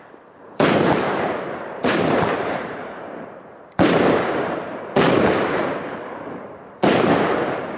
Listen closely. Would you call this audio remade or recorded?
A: remade